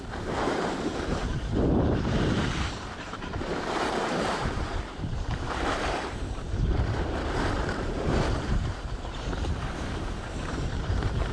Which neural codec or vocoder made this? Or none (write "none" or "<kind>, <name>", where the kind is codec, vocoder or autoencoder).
vocoder, BigVGAN v2